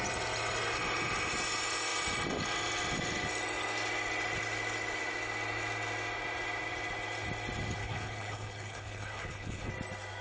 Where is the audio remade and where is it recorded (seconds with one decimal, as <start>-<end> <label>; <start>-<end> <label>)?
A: 0.0-7.8 recorded; 7.8-9.7 remade; 9.7-10.2 recorded